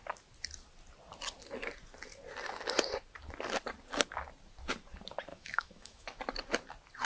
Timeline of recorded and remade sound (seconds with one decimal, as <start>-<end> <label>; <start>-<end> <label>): 0.0-5.3 recorded; 5.3-6.2 remade; 6.2-7.1 recorded